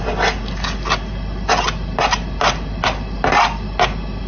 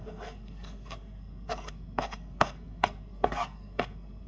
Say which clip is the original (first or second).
first